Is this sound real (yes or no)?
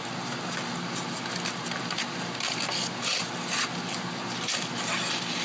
yes